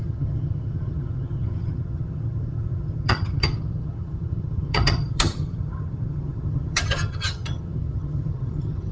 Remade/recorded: remade